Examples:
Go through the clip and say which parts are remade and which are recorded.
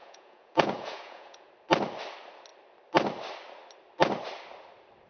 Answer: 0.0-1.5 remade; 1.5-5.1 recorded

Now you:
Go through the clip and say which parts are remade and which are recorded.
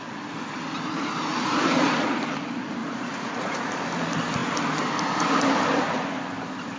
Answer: 0.0-1.3 recorded; 1.3-2.2 remade; 2.2-2.8 recorded; 2.8-3.7 remade; 3.7-6.8 recorded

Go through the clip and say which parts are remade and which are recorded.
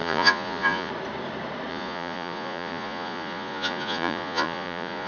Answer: 0.0-0.9 remade; 0.9-1.7 recorded; 1.7-5.1 remade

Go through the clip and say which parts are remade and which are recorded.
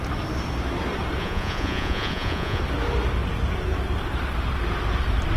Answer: 0.0-1.2 recorded; 1.2-2.6 remade; 2.6-5.4 recorded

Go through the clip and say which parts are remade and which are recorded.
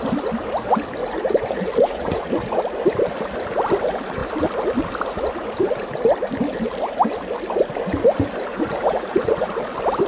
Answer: 0.0-1.0 recorded; 1.0-2.6 remade; 2.6-8.5 recorded; 8.5-9.6 remade; 9.6-10.1 recorded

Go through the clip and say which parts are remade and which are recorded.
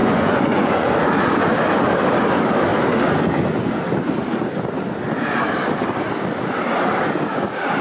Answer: 0.0-0.9 remade; 0.9-7.8 recorded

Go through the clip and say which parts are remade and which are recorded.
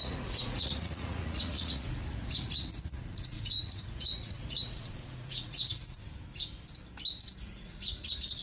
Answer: 0.0-6.0 remade; 6.0-7.4 recorded; 7.4-8.4 remade